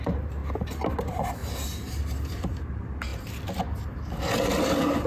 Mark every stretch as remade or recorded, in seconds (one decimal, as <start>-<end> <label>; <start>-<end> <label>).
0.0-0.4 remade; 0.4-1.0 recorded; 1.0-1.4 remade; 1.4-2.1 recorded; 2.1-3.1 remade; 3.1-4.6 recorded; 4.6-5.1 remade